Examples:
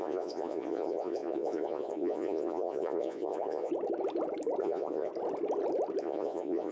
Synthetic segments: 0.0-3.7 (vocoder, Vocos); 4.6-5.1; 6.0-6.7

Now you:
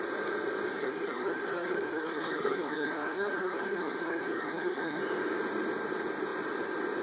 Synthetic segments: 0.8-5.0 (codec, SNAC)

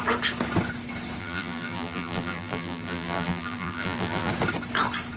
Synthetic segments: 1.2-4.3 (vocoder, BigVGAN v2)

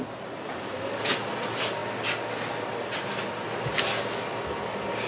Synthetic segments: none

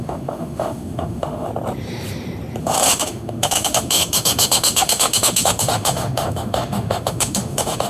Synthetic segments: 0.0-1.5 (autoencoder, DAC-VAE); 2.6-7.9